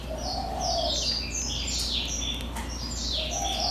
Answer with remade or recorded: recorded